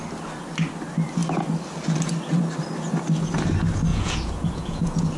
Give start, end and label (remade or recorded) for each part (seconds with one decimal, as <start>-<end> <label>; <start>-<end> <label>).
0.0-3.9 recorded; 3.9-5.2 remade